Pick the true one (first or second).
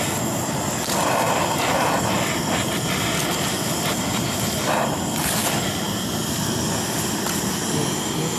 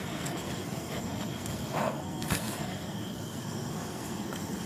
first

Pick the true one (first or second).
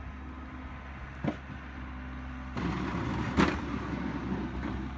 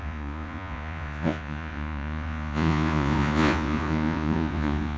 first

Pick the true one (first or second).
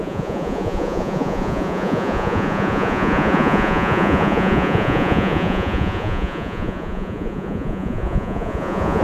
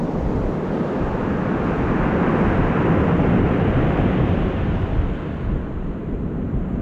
second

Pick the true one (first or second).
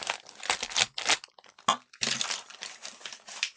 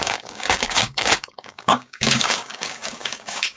first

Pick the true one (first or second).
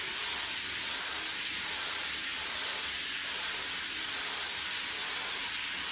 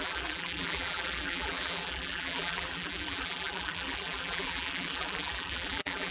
first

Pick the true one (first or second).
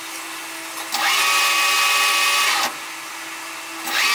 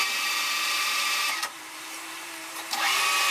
first